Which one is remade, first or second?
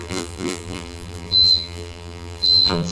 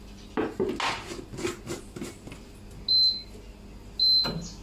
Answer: first